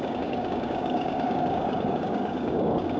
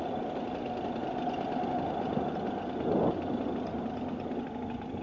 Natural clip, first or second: second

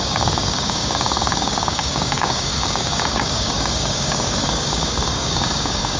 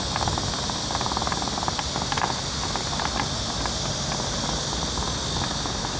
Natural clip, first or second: second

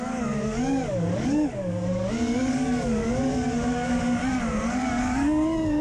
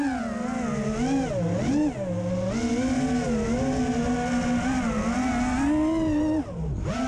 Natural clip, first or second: second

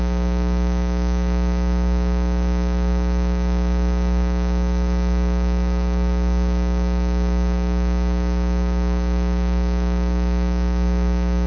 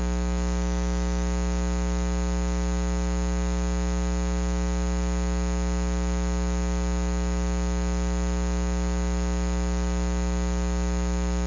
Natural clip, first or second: second